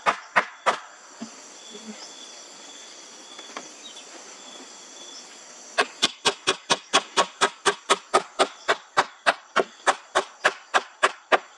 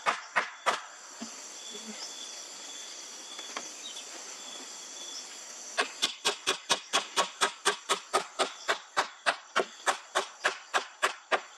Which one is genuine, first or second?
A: first